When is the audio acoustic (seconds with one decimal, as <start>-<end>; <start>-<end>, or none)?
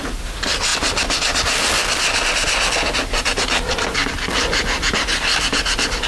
1.8-3.2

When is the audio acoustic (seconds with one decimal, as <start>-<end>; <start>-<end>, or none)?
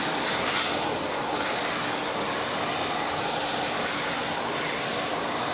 0.9-5.5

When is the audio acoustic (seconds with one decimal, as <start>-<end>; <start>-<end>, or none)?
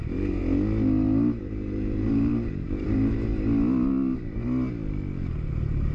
0.4-1.4; 3.3-5.5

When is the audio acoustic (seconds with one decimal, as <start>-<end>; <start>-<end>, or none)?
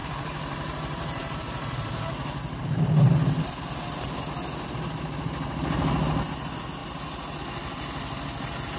1.4-8.8